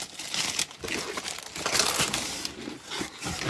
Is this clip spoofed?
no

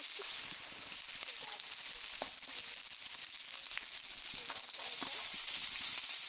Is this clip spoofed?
no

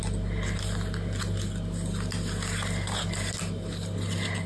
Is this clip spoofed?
no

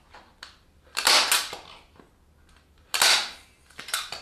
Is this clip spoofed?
no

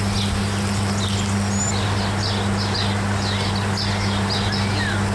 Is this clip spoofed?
no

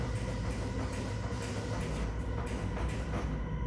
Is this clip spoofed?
no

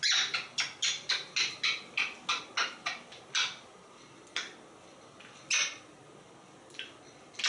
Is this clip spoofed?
no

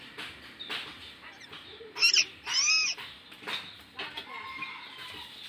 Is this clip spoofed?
no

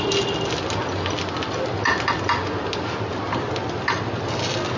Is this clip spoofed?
no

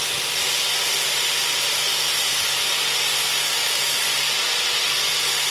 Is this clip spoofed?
no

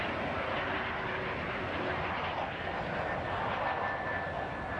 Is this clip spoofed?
no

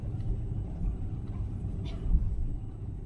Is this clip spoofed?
yes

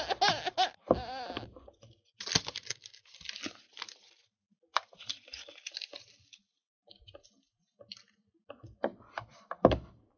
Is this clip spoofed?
no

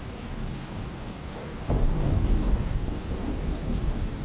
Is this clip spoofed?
yes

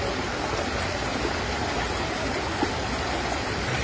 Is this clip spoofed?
no